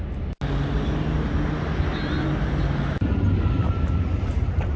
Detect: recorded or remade recorded